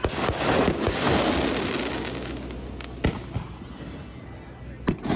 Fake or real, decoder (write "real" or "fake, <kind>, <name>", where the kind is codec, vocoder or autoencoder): real